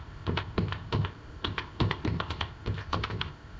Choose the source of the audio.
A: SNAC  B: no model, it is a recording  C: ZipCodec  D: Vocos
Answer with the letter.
C